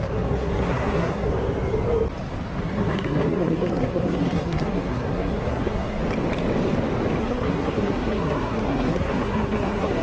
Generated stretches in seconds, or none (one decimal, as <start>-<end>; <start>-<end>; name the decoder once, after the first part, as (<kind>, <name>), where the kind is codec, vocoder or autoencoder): 0.0-1.3 (codec, SNAC); 2.6-6.0; 7.2-10.0